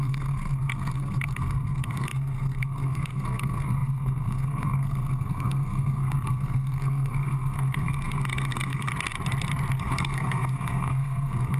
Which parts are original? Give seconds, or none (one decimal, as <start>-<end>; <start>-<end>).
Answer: 8.9-9.8